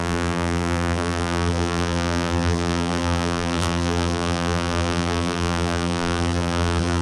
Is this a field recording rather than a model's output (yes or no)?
no